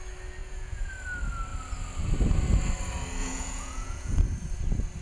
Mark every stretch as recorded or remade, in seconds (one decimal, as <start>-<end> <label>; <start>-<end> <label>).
0.0-0.4 recorded; 0.4-0.9 remade; 0.9-3.2 recorded; 3.2-4.2 remade; 4.2-5.0 recorded